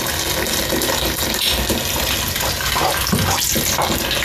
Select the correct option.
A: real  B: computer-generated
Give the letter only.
A